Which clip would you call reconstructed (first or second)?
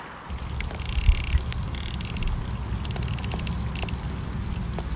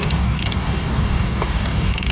second